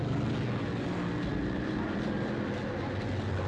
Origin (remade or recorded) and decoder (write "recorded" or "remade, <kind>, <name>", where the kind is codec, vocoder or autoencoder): recorded